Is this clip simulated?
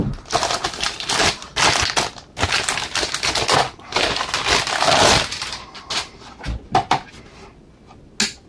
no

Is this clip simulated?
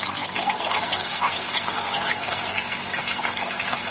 yes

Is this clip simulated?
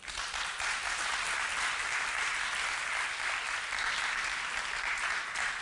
no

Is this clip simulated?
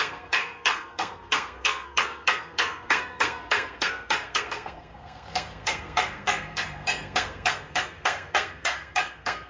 yes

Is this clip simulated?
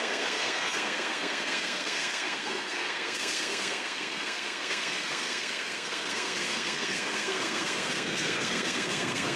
yes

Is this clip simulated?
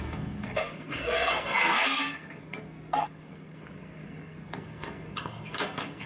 yes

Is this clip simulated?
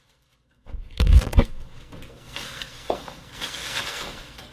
yes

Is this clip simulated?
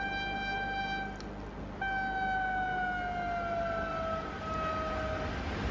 no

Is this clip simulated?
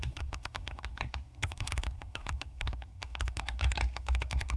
yes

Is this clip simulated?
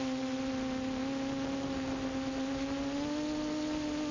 no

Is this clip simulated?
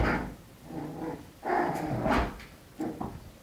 no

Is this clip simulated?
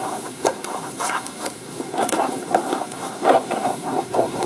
yes